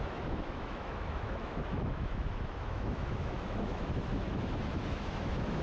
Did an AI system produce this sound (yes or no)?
yes